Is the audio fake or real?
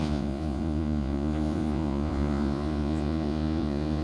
fake